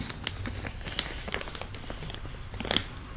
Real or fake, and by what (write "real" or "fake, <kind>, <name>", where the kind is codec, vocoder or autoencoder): real